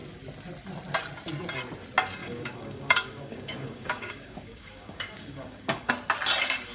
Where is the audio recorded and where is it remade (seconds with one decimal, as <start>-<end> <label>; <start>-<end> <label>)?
0.0-2.2 recorded; 2.2-5.9 remade; 5.9-6.7 recorded